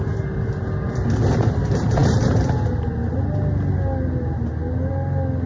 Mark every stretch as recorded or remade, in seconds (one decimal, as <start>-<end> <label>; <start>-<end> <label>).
0.0-5.5 recorded

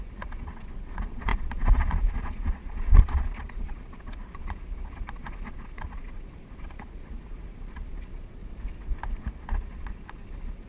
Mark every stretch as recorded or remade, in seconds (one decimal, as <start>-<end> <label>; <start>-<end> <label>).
0.0-8.4 remade; 8.4-9.5 recorded; 9.5-10.7 remade

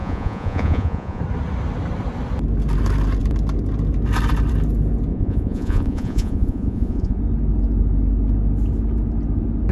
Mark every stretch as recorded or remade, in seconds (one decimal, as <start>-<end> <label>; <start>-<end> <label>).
0.0-1.2 remade; 1.2-5.1 recorded; 5.1-7.2 remade; 7.2-9.7 recorded

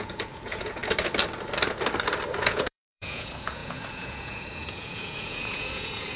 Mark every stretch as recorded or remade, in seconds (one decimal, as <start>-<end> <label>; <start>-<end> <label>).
0.0-0.8 remade; 0.8-2.4 recorded; 2.4-6.2 remade

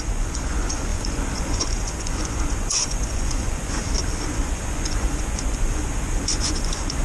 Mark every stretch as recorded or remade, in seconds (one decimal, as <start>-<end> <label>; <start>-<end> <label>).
0.0-3.8 remade; 3.8-4.3 recorded; 4.3-7.0 remade

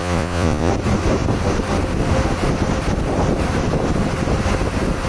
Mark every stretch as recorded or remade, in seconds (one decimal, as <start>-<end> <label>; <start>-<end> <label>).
0.0-0.7 remade; 0.7-5.1 recorded

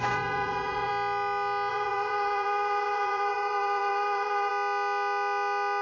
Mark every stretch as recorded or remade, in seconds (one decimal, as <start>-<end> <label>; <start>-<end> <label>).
0.0-0.9 remade; 0.9-1.7 recorded; 1.7-4.5 remade; 4.5-5.8 recorded

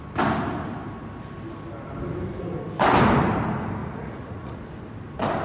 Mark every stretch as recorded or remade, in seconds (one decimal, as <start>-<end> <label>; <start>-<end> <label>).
0.0-3.8 recorded; 3.8-4.6 remade; 4.6-5.4 recorded